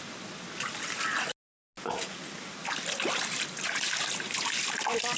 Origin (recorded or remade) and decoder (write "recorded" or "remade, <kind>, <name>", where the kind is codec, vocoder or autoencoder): recorded